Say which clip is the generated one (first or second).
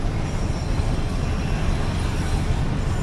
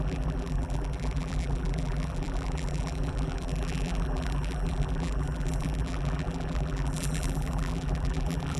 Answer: second